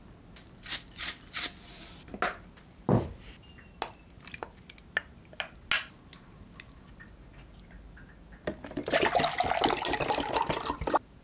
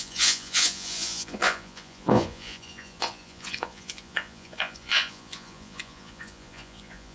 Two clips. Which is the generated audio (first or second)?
second